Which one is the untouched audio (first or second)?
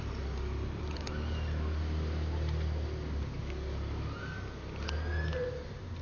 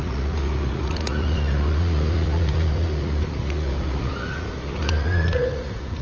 first